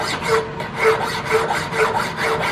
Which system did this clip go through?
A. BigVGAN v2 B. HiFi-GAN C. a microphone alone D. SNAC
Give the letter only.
A